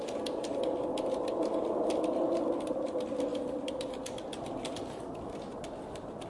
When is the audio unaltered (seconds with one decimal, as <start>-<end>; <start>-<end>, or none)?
0.0-6.3